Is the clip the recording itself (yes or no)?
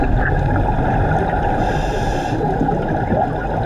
yes